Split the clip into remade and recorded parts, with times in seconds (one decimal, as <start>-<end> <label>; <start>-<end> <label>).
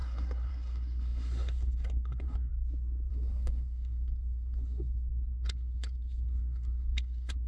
0.0-2.5 remade; 2.5-3.1 recorded; 3.1-7.5 remade